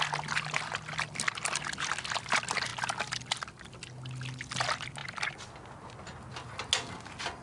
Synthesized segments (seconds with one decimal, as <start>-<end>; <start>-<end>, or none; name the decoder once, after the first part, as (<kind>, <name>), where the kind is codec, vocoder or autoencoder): none

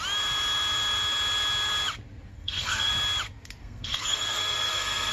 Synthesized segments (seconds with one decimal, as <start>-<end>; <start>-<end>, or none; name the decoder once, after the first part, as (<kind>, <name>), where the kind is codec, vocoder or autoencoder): 2.3-2.9 (codec, SNAC); 3.6-5.1

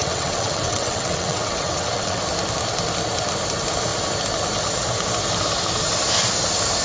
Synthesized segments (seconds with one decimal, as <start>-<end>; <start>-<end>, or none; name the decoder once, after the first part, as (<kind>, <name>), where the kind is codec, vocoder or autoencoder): 0.0-2.2 (vocoder, WaveNeXt)

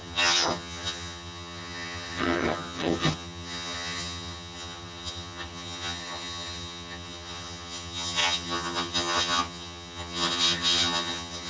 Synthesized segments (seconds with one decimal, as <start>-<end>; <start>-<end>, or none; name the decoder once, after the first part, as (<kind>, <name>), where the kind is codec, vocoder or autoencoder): 0.0-11.5 (vocoder, HiFi-GAN)

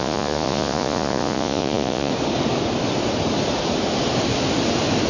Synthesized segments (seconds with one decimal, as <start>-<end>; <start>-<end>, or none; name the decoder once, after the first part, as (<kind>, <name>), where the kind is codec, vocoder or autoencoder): 0.0-2.1 (vocoder, Vocos)

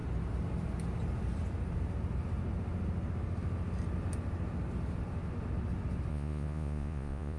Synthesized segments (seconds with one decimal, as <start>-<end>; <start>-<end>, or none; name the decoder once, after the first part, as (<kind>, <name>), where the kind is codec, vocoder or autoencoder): 6.1-7.4 (vocoder, Vocos)